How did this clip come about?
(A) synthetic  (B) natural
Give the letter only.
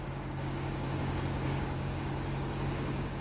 A